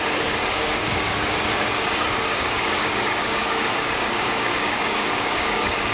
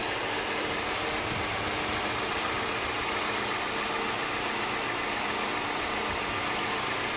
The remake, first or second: first